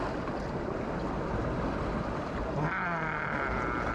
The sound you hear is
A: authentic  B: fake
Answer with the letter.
A